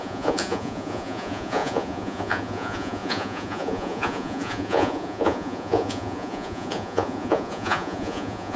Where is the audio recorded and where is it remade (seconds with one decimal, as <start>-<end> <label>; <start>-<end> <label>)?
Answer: 0.0-8.6 remade